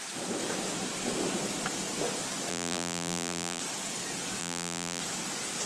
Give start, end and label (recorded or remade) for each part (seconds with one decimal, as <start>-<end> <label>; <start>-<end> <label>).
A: 0.0-2.5 recorded; 2.5-3.6 remade; 3.6-4.4 recorded; 4.4-5.0 remade; 5.0-5.7 recorded